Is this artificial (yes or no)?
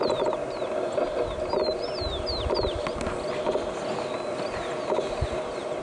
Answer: no